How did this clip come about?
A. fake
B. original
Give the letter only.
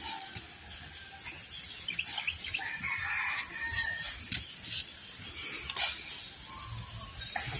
B